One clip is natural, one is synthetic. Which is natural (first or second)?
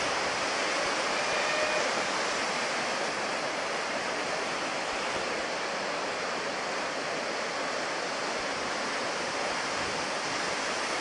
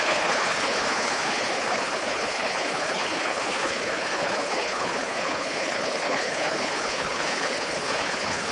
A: first